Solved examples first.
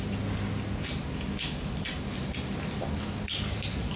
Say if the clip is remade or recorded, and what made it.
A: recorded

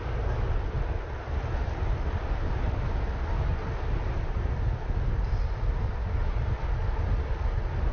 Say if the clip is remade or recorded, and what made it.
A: recorded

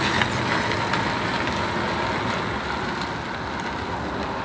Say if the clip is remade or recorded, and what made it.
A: recorded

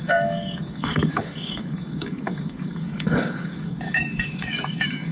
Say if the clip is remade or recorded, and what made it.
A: remade, codec, DAC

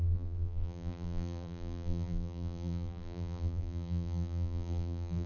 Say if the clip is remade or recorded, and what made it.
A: remade, vocoder, BigVGAN v2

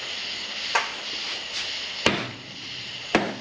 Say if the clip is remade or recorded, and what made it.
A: recorded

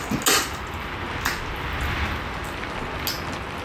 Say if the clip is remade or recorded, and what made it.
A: recorded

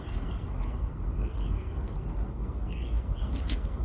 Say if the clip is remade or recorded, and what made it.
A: remade, codec, SNAC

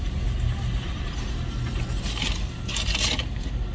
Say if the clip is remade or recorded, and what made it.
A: recorded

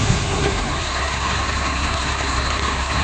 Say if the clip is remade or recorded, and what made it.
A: remade, codec, SNAC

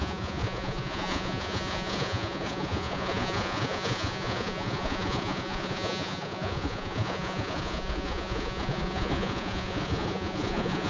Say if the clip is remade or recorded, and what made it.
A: remade, vocoder, Vocos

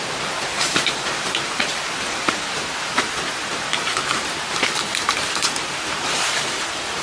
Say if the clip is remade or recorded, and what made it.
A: remade, vocoder, BigVGAN v2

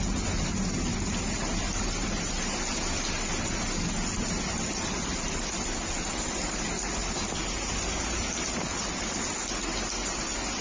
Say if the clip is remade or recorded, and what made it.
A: recorded